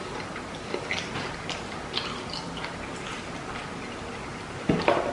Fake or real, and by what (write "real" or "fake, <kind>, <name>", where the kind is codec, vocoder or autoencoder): real